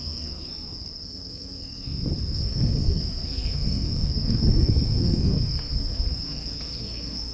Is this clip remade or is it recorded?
remade